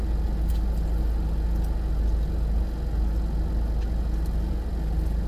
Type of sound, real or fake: real